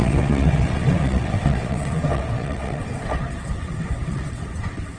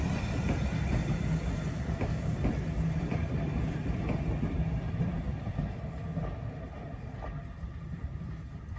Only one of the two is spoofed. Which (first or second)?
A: first